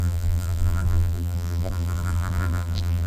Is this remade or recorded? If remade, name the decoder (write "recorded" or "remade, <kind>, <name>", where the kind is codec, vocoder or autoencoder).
remade, vocoder, BigVGAN v2